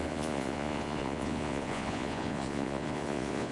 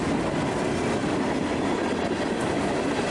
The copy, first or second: first